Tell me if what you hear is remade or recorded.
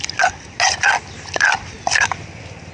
recorded